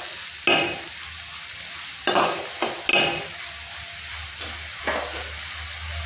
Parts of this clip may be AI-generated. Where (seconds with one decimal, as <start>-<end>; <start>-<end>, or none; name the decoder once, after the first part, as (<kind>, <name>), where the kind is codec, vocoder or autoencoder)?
none